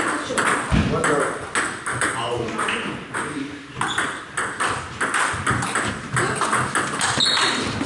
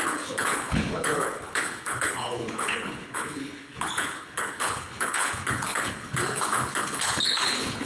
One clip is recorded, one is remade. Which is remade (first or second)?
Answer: second